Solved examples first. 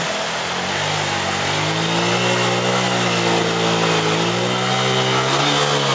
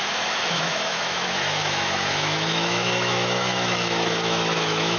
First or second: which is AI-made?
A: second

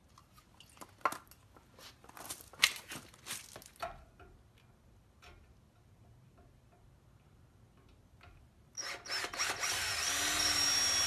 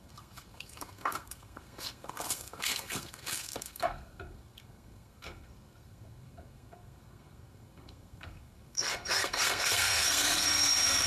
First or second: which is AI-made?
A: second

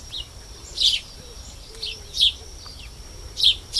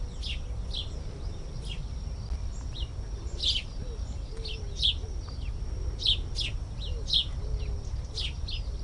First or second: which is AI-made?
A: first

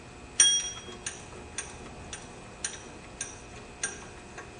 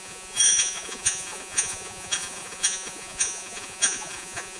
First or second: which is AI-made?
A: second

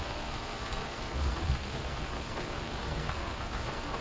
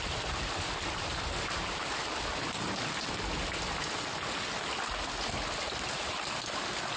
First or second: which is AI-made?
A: first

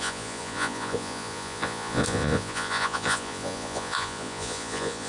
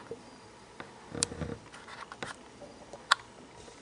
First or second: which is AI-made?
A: first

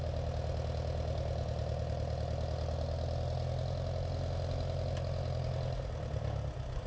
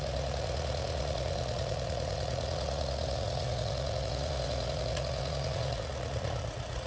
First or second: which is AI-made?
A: second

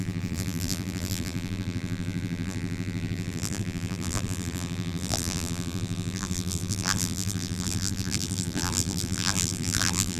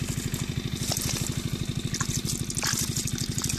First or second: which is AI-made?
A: first